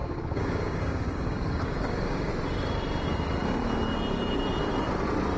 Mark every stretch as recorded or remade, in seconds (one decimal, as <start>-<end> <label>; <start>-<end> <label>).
0.0-2.3 remade; 2.3-5.4 recorded